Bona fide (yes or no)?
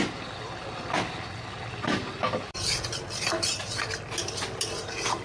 yes